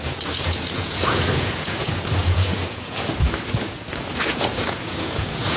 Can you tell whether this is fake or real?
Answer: fake